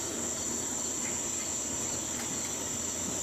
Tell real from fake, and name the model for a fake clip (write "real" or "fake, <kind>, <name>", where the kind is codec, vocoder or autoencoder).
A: real